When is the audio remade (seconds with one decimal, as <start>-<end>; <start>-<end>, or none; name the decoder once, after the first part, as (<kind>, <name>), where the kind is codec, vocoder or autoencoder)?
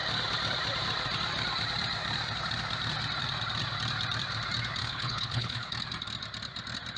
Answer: 4.8-5.7 (codec, HILCodec)